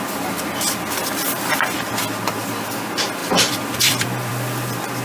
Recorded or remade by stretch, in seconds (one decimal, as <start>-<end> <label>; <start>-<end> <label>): 0.0-1.0 recorded; 1.0-1.6 remade; 1.6-3.2 recorded; 3.2-4.3 remade; 4.3-5.0 recorded